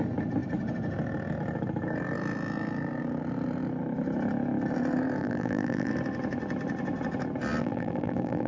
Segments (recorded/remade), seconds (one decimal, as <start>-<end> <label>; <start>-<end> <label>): 0.0-5.2 recorded; 5.2-5.9 remade; 5.9-7.6 recorded; 7.6-8.5 remade

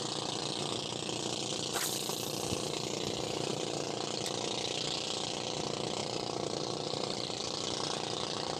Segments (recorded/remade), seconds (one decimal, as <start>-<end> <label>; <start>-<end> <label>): 0.0-6.0 recorded; 6.0-7.4 remade; 7.4-8.6 recorded

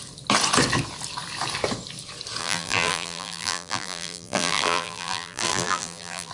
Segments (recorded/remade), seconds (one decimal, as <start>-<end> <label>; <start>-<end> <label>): 0.0-2.4 recorded; 2.4-6.3 remade